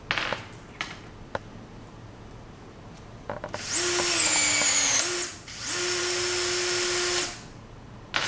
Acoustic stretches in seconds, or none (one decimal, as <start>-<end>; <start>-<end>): 0.0-8.3